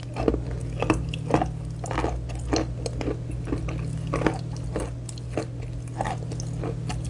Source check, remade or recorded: recorded